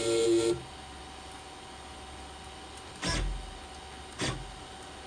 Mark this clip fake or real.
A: real